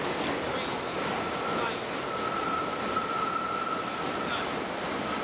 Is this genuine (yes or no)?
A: yes